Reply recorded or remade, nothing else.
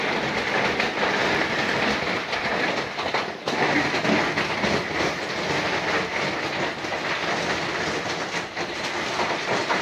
recorded